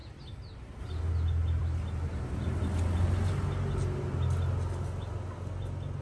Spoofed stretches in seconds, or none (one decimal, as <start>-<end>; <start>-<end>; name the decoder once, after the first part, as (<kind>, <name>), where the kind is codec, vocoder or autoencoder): none